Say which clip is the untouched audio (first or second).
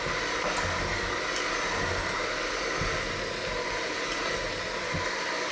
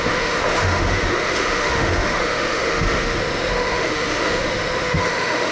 first